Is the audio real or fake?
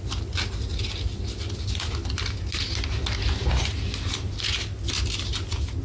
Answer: real